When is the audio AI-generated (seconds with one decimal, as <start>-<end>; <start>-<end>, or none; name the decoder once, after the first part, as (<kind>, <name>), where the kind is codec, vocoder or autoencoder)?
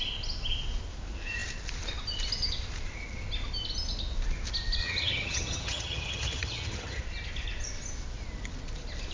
4.8-7.0 (vocoder, HiFi-GAN)